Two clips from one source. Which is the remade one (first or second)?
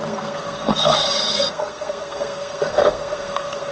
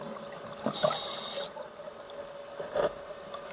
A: first